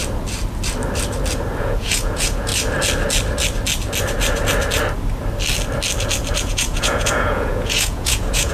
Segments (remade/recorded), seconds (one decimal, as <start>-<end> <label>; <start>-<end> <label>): 0.0-1.6 recorded; 1.6-2.5 remade; 2.5-6.4 recorded; 6.4-8.5 remade